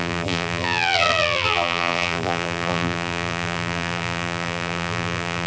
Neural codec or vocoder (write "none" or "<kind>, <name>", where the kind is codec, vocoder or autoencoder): vocoder, BigVGAN v2